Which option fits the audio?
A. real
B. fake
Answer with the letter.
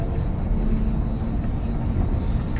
A